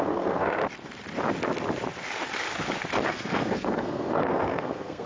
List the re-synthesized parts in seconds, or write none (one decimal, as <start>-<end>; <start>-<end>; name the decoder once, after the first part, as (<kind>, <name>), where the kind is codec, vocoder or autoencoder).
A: 0.0-0.6 (codec, SNAC); 3.1-5.1